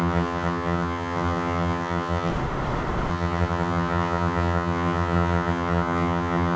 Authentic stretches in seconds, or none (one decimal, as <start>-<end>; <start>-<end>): 2.3-3.1